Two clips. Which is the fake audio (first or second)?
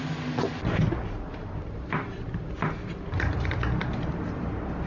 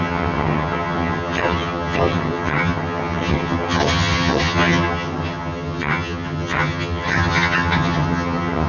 second